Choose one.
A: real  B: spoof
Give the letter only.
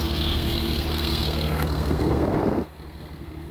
B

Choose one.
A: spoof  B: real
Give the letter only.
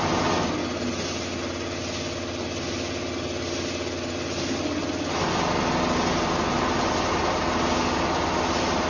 B